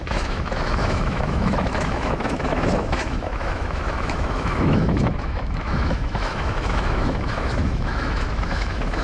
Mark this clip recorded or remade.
remade